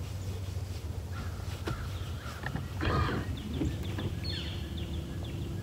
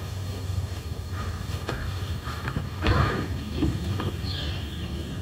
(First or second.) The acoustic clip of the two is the first